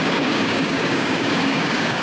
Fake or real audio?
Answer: fake